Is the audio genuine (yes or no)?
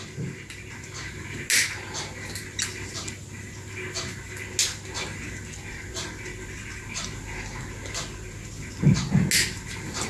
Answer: yes